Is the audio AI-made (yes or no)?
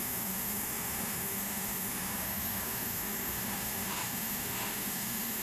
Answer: yes